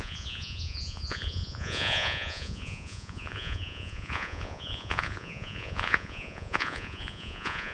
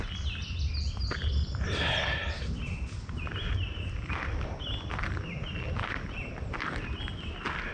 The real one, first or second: second